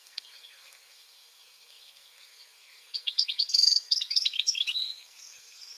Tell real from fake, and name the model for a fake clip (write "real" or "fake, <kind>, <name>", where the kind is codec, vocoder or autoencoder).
fake, codec, SNAC